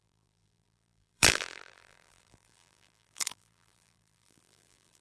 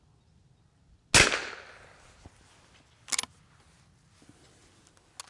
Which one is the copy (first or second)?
first